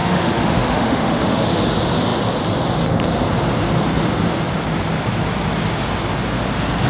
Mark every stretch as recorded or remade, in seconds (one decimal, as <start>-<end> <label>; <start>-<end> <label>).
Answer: 0.0-1.6 remade; 1.6-6.9 recorded